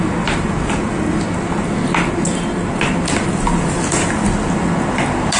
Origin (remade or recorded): recorded